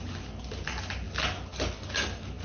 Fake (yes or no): no